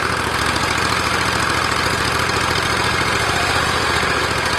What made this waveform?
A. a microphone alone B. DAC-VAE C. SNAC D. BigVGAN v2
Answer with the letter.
A